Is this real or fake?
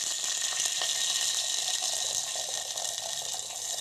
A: real